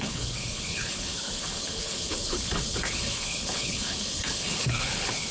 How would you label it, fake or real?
fake